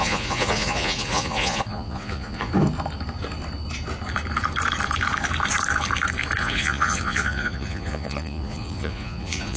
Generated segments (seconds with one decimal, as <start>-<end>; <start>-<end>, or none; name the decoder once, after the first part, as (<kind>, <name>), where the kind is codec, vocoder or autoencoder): 0.0-2.5 (vocoder, Vocos); 6.4-9.6